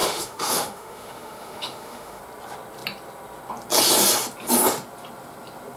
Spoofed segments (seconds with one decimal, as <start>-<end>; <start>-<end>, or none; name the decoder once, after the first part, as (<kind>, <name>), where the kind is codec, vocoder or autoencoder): 0.0-2.2 (autoencoder, DAC-VAE)